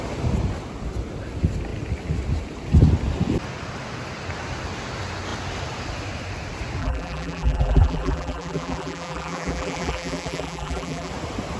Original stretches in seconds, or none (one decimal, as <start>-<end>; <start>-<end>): 0.0-6.8; 11.1-11.6